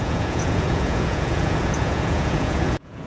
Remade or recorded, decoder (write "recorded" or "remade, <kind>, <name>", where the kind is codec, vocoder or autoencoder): remade, vocoder, Vocos